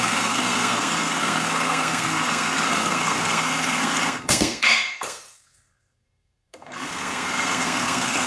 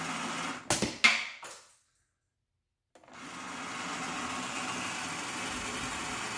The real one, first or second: second